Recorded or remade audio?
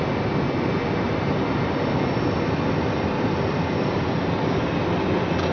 recorded